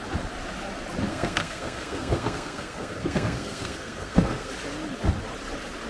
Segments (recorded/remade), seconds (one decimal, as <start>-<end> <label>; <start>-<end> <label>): 0.0-1.1 recorded; 1.1-4.5 remade; 4.5-5.9 recorded